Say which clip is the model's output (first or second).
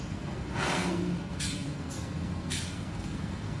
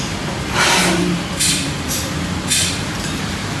first